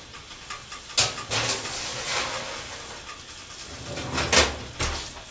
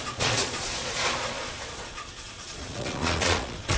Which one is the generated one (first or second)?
second